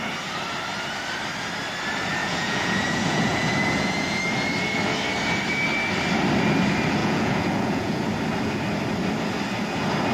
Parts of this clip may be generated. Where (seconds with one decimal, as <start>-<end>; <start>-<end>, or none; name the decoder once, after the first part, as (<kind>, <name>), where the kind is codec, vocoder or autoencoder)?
2.2-4.2 (vocoder, Vocos); 7.0-8.0